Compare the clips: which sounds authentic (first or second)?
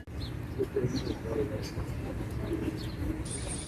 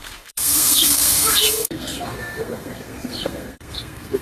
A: first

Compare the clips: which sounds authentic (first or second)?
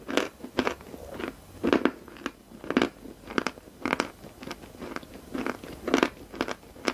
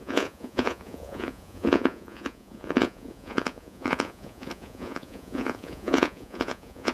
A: first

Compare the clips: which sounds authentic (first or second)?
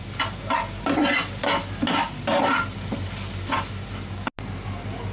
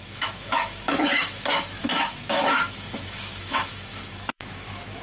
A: first